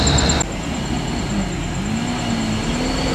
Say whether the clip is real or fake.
real